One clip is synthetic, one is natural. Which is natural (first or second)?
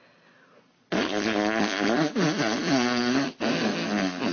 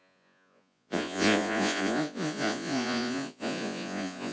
first